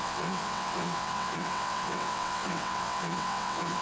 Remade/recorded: remade